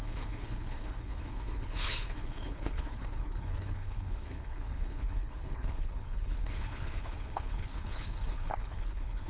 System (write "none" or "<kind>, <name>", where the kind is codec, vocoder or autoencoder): codec, HILCodec